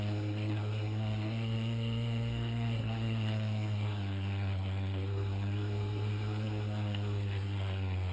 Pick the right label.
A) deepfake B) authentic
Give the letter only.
A